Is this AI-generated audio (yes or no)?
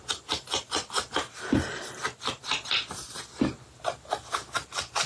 no